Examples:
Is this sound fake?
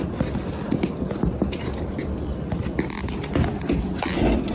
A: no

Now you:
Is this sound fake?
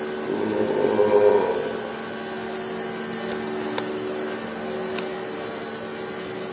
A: no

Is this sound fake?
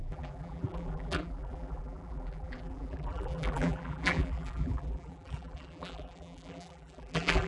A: yes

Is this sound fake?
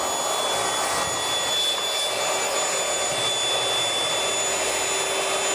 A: no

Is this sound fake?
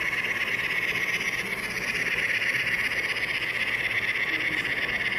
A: yes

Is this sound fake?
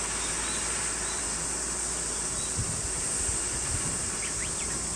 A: no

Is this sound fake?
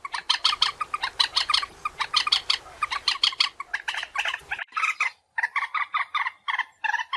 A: no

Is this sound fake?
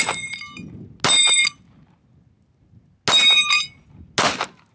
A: no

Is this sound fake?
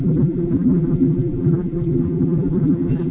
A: yes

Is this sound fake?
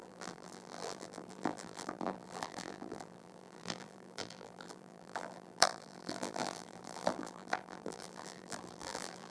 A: yes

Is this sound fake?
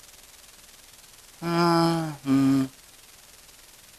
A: no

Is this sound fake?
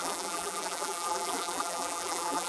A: yes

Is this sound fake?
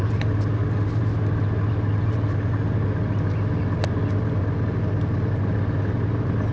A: no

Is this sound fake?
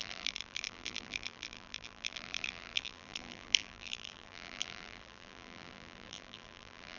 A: yes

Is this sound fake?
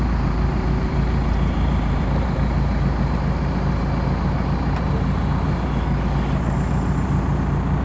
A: yes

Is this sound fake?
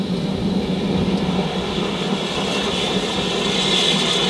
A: no